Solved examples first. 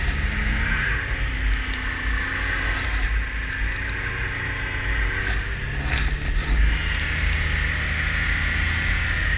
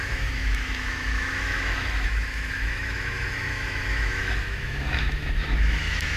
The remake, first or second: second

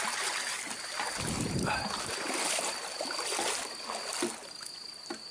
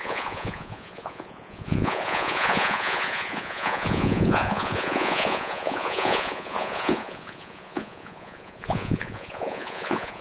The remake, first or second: second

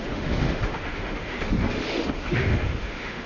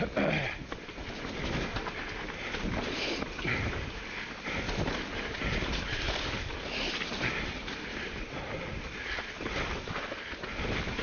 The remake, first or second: first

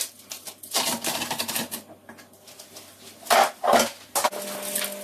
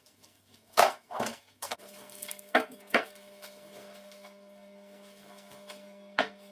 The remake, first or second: second